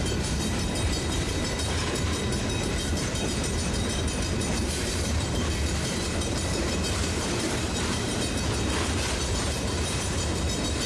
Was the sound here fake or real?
fake